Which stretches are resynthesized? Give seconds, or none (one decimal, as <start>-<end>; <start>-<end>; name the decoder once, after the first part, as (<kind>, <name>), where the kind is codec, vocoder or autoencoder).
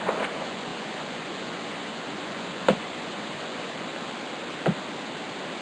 0.0-3.9 (vocoder, Vocos)